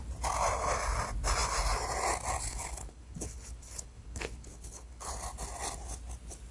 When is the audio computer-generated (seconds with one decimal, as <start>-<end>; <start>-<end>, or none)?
2.5-5.1